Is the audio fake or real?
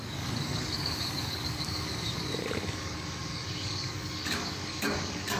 fake